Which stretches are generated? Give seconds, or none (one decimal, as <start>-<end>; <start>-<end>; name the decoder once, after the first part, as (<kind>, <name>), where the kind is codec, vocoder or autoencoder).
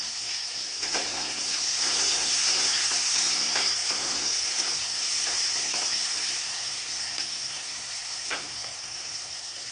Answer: 0.0-9.7 (codec, SNAC)